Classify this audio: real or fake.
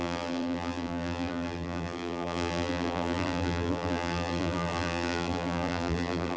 fake